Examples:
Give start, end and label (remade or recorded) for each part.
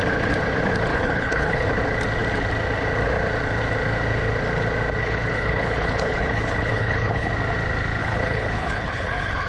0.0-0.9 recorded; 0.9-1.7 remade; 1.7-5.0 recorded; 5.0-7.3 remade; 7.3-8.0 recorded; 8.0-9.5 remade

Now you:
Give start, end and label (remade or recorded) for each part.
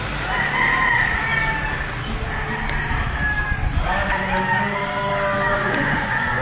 0.0-5.5 recorded; 5.5-6.4 remade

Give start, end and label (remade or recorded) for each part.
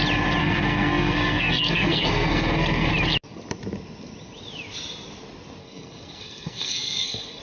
0.0-0.4 recorded; 0.4-2.9 remade; 2.9-5.6 recorded; 5.6-7.4 remade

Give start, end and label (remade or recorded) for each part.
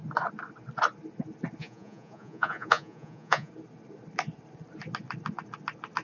0.0-1.6 recorded; 1.6-3.5 remade; 3.5-6.0 recorded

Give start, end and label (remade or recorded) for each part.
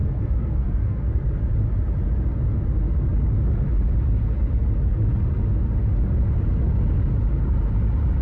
0.0-1.4 remade; 1.4-8.2 recorded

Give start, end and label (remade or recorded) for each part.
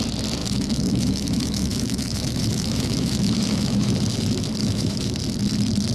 0.0-0.4 recorded; 0.4-3.9 remade; 3.9-4.6 recorded; 4.6-5.1 remade; 5.1-5.9 recorded